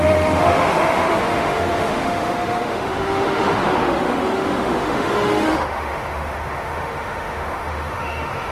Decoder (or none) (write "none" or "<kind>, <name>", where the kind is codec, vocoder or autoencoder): autoencoder, DAC-VAE